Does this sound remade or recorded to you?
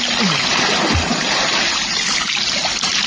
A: recorded